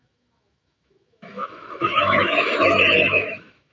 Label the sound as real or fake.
fake